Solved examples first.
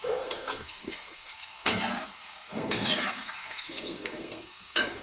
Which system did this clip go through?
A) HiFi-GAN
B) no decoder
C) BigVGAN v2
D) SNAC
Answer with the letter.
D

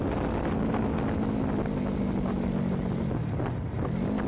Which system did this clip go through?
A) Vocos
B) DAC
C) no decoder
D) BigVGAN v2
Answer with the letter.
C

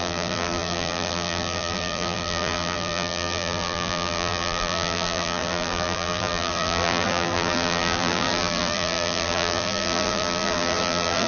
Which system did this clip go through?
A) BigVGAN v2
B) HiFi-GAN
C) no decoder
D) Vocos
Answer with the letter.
A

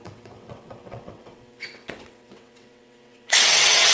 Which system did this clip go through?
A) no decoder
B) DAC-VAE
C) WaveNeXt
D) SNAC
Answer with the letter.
C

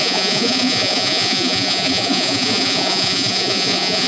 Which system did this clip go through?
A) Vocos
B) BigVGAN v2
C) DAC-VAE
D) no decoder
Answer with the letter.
A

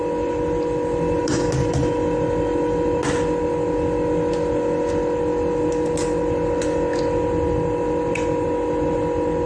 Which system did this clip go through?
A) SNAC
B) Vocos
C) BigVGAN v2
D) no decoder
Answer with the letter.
D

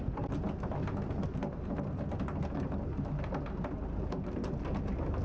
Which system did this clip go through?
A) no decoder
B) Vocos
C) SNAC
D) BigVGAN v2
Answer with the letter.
A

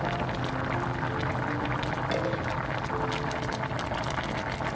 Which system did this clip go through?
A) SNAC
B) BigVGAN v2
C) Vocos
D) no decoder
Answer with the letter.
D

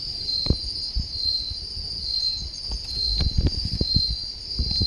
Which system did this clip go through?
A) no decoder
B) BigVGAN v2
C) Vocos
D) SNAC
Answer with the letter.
A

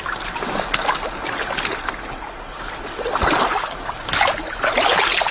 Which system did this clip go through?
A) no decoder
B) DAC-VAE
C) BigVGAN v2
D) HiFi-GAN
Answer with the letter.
A